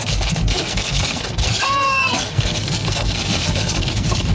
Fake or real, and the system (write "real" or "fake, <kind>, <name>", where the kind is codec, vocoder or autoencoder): fake, codec, SNAC